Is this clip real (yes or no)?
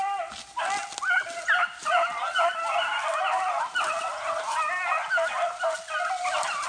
yes